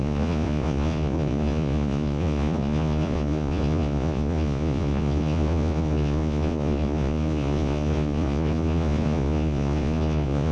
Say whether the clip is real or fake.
fake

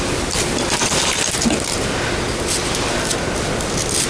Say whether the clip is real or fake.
real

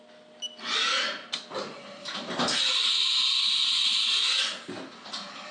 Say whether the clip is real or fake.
real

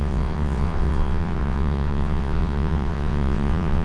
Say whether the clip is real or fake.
fake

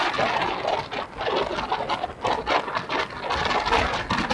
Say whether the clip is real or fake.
real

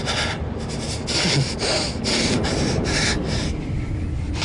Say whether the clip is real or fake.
real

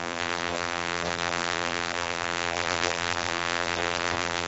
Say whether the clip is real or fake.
fake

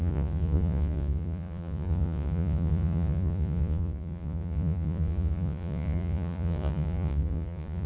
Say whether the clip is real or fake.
fake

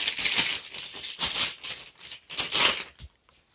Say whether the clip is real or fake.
real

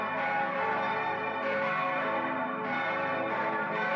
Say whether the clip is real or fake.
fake